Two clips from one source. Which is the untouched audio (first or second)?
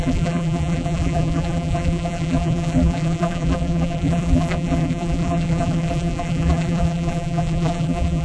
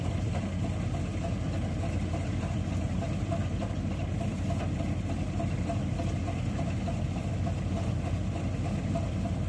second